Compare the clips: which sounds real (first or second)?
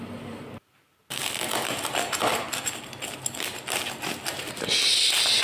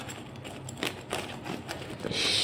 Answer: first